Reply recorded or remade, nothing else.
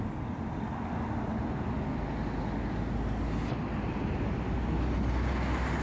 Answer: recorded